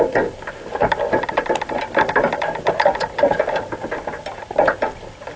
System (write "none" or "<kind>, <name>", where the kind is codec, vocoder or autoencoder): none